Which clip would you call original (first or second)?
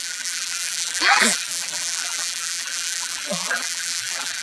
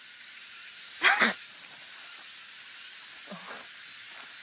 second